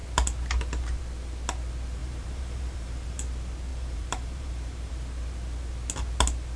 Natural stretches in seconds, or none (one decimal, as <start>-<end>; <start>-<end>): 0.0-2.0; 3.2-3.7; 4.9-6.6